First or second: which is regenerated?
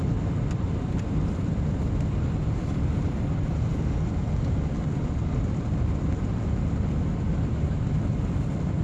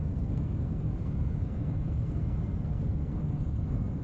second